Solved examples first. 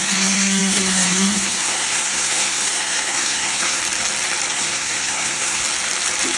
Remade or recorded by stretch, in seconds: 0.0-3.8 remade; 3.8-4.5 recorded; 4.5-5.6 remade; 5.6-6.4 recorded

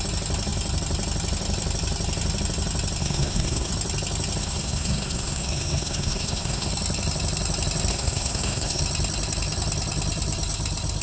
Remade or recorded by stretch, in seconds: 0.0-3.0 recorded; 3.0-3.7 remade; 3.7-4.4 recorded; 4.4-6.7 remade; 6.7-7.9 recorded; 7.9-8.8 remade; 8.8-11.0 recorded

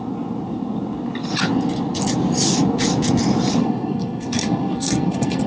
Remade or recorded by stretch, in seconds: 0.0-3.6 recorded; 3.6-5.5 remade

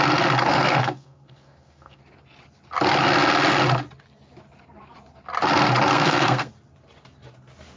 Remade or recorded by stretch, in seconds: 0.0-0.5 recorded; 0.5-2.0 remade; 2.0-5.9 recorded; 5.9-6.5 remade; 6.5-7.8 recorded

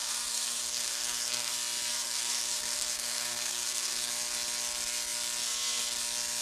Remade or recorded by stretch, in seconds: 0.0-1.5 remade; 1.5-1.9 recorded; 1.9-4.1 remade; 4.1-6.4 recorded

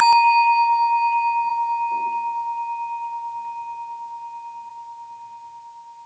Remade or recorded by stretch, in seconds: 0.0-6.1 recorded